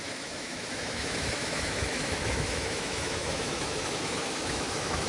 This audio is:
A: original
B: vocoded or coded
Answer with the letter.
B